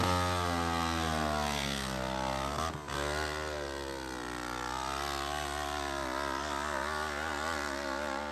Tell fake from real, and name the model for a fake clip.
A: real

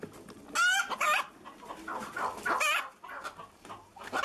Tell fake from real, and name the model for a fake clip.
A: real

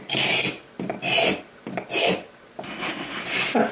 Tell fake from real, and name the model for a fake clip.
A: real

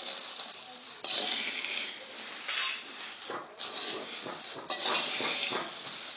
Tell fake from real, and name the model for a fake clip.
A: real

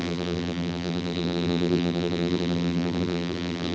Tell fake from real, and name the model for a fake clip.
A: fake, vocoder, BigVGAN v2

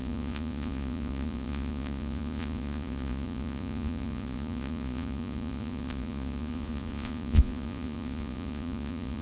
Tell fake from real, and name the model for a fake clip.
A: fake, vocoder, Vocos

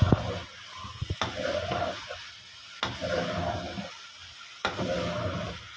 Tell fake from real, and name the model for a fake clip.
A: real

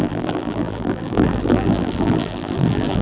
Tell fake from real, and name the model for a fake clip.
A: fake, vocoder, BigVGAN v2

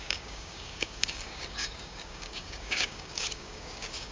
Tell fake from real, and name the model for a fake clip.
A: fake, codec, DAC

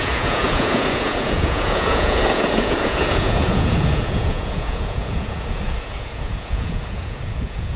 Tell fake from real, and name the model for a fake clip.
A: fake, vocoder, Vocos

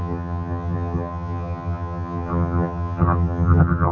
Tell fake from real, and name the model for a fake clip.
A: fake, vocoder, HiFi-GAN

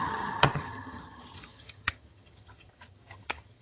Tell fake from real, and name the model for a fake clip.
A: fake, vocoder, HiFi-GAN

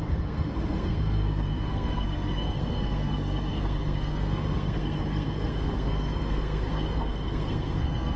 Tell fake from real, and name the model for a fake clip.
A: fake, codec, SNAC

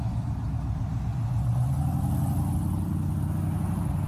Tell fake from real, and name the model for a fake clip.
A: real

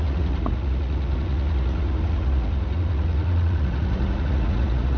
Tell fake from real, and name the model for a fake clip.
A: fake, vocoder, Vocos